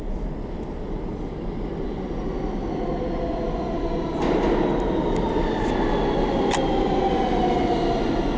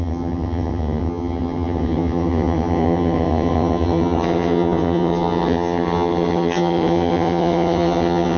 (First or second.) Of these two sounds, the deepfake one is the second